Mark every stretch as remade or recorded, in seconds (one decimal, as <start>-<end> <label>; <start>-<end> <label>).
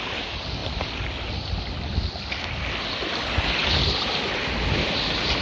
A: 0.0-5.4 recorded